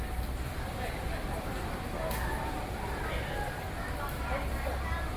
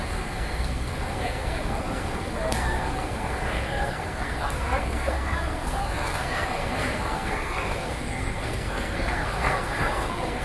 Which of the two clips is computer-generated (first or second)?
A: second